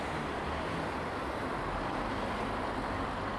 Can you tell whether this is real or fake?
real